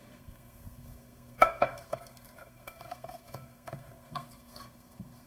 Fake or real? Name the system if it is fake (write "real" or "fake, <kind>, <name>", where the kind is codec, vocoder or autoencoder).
fake, codec, SNAC